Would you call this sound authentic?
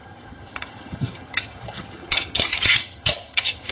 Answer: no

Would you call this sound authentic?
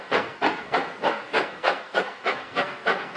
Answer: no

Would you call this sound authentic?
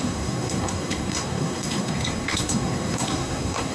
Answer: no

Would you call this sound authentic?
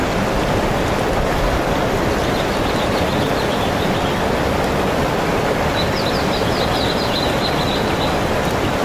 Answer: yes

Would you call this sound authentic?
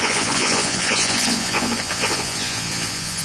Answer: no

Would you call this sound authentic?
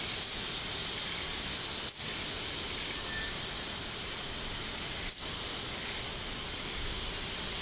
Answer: yes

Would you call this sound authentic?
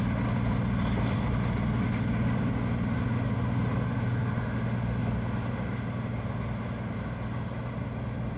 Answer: yes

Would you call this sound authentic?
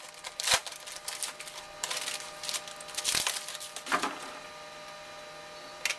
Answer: yes